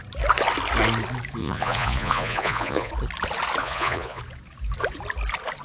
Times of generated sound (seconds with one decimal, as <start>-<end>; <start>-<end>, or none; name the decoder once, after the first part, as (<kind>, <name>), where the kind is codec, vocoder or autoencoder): 1.4-2.9 (vocoder, Vocos); 3.6-4.2